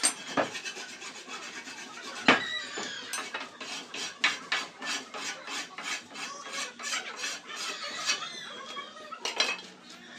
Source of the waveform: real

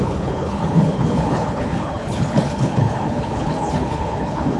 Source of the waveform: fake